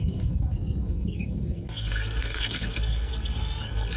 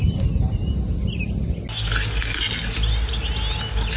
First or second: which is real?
second